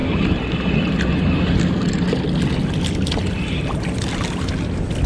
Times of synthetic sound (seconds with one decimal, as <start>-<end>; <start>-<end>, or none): none